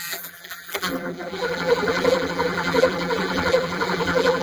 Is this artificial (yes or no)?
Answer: yes